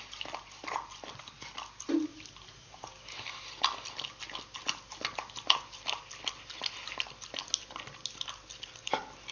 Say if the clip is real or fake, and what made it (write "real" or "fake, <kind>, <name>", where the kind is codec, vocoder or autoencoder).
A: real